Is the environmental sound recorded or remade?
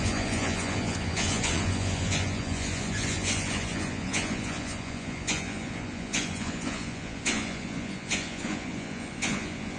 remade